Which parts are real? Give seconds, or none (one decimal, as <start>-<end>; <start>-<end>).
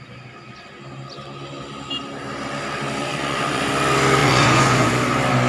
0.0-3.0; 3.7-4.2; 4.9-5.5